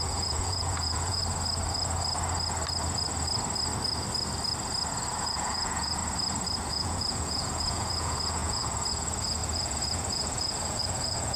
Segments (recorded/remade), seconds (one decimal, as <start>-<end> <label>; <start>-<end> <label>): 0.0-1.2 remade; 1.2-5.2 recorded; 5.2-6.0 remade; 6.0-6.7 recorded; 6.7-11.4 remade